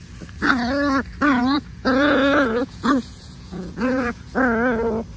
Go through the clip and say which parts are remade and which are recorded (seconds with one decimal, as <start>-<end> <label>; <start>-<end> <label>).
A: 0.0-1.3 recorded; 1.3-4.4 remade; 4.4-5.2 recorded